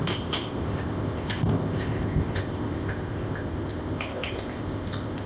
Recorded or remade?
remade